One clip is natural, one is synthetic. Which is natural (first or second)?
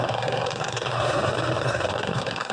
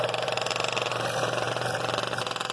second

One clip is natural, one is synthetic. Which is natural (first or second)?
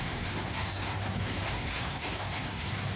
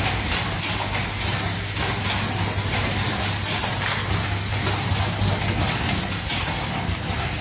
second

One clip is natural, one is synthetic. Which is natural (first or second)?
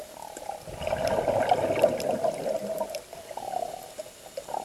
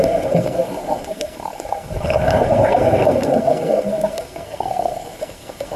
first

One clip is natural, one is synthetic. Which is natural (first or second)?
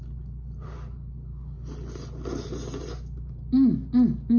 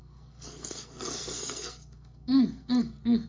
first